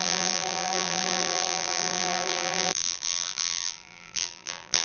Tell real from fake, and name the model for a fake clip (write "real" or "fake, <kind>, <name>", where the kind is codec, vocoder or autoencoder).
fake, vocoder, BigVGAN v2